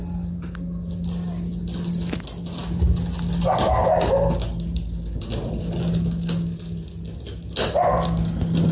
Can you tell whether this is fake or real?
real